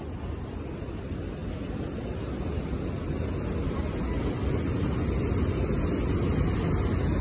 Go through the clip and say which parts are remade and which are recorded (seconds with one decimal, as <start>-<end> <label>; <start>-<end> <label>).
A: 0.0-7.2 recorded